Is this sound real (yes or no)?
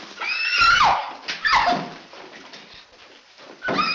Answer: yes